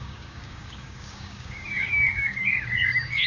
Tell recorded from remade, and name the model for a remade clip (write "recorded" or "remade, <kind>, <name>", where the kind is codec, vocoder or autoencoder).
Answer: remade, codec, DAC